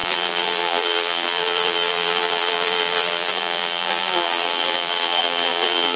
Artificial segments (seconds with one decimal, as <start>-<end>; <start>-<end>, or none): 0.0-6.0